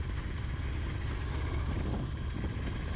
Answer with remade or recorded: recorded